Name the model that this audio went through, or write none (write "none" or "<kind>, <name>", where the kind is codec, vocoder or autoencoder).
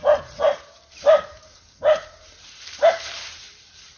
vocoder, BigVGAN v2